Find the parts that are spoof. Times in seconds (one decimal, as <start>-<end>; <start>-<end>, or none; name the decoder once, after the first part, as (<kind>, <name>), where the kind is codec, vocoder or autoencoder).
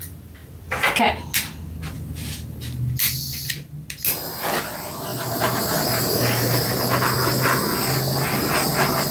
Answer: 5.1-6.7 (vocoder, BigVGAN v2)